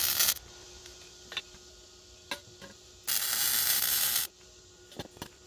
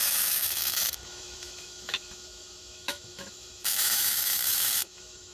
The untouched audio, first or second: first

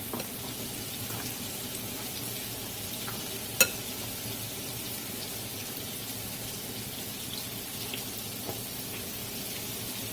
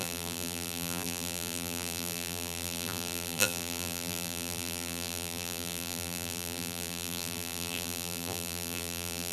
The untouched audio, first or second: first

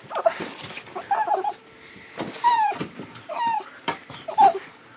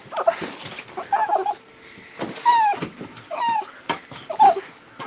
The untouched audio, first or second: second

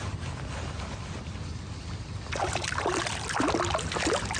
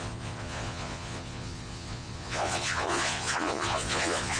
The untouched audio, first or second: first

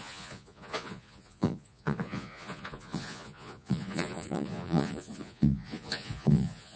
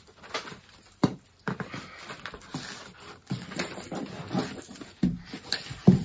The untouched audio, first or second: second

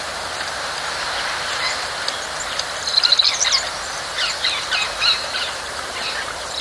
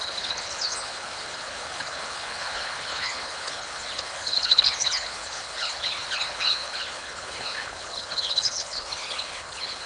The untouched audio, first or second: first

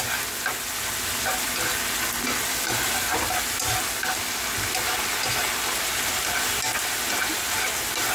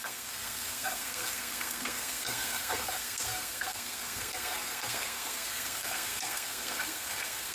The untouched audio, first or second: first